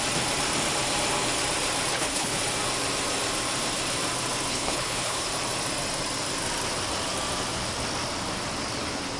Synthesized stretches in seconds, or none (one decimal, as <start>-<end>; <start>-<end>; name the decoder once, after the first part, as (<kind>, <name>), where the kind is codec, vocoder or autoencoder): 1.9-2.4 (codec, HILCodec); 4.5-5.3